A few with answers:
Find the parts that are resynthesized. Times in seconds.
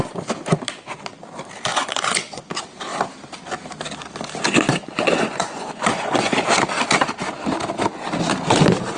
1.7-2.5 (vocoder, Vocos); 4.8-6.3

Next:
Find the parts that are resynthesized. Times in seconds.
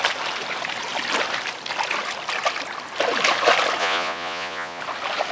3.8-4.8 (vocoder, Vocos)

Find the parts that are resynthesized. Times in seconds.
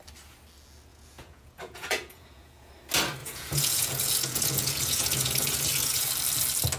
0.9-2.7 (vocoder, Vocos); 3.2-6.1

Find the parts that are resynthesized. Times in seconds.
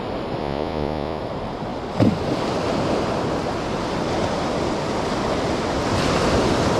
0.4-1.2 (vocoder, Vocos)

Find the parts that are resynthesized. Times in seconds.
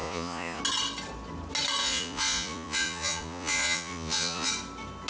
0.0-0.6 (vocoder, Vocos); 1.8-4.5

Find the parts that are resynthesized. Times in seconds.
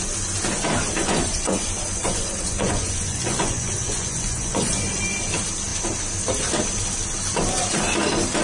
1.0-5.0 (vocoder, Vocos)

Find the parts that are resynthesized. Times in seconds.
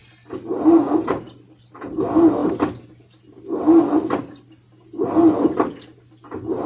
none